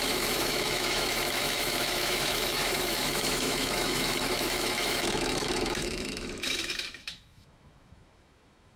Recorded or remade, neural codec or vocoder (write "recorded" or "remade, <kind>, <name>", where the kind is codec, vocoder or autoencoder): remade, autoencoder, DAC-VAE